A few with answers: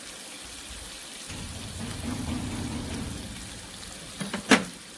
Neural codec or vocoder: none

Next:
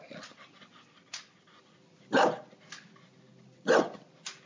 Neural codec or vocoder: none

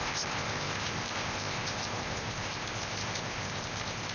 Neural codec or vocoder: codec, ZipCodec